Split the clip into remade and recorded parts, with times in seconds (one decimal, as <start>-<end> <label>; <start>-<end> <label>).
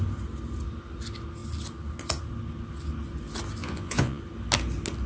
0.0-3.6 recorded; 3.6-4.2 remade; 4.2-5.1 recorded